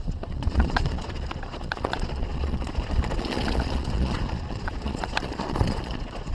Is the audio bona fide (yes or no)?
no